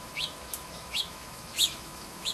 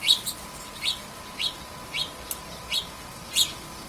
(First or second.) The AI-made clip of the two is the first